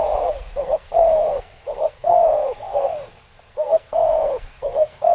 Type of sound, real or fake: fake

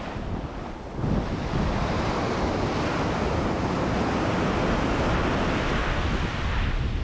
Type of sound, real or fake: real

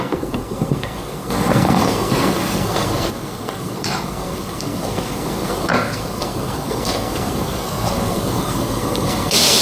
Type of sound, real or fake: fake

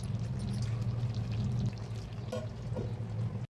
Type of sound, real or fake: real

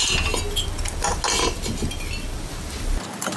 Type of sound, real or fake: real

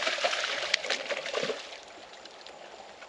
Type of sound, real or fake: real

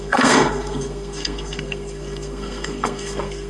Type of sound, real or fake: fake